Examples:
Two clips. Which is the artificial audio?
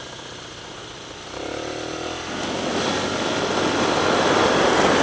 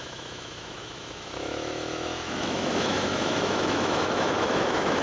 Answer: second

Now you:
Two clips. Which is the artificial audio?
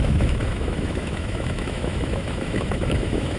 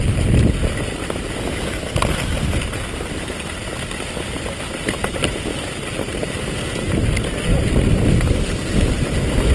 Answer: first